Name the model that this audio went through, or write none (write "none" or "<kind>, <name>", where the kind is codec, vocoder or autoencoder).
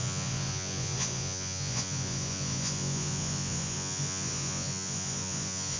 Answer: vocoder, Vocos